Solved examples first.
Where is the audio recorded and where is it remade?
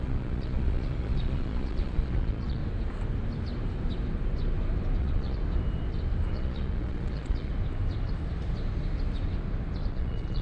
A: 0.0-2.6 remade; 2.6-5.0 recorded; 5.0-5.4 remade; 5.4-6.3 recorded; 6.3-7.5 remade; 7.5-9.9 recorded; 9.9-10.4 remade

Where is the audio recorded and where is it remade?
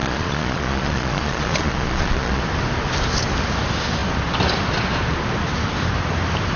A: 0.0-2.4 remade; 2.4-6.6 recorded